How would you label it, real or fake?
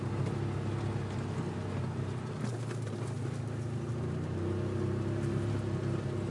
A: real